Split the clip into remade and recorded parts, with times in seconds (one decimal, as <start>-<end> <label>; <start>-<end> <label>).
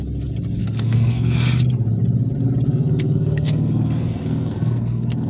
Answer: 0.0-0.6 recorded; 0.6-1.4 remade; 1.4-2.7 recorded; 2.7-5.3 remade